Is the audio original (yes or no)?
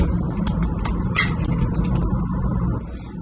yes